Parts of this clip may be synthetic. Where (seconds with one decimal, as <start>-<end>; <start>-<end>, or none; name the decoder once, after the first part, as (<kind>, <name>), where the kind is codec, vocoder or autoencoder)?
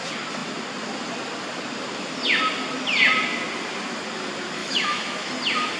4.6-5.3 (autoencoder, DAC-VAE)